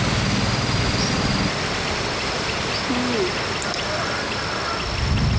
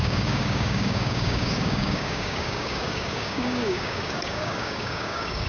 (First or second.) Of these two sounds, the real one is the first